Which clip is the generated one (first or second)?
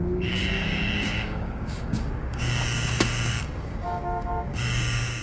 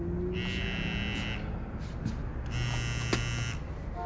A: first